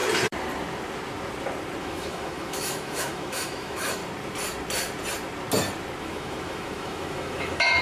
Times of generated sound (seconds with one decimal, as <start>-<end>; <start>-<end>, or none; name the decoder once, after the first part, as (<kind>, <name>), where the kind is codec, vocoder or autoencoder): 1.8-4.0 (autoencoder, DAC-VAE); 6.0-7.8